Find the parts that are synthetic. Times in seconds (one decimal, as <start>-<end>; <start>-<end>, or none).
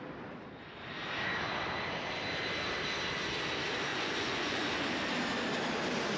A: 3.9-4.8